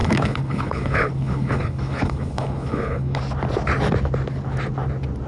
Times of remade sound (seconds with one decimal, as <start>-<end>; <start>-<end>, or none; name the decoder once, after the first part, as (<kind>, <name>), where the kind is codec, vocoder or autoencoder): 0.0-3.2 (codec, HILCodec)